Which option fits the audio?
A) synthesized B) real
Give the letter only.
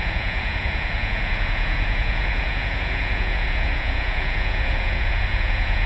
A